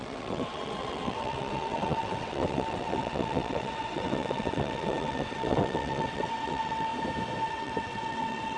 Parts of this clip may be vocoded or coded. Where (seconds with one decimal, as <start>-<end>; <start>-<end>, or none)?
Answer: 0.0-6.9; 7.4-8.6